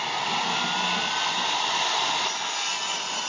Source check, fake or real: real